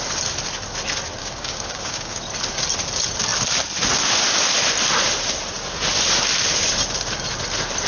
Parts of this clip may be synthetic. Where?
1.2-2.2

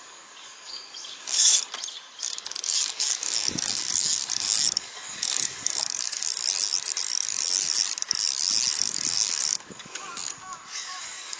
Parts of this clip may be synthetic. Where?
0.0-1.5; 2.2-6.3; 8.8-11.4

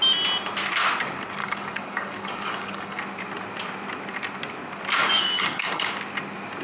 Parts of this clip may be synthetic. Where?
1.4-3.0; 5.0-5.9

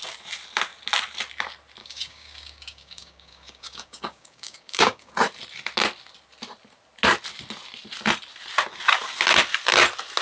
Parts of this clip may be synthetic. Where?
1.8-5.1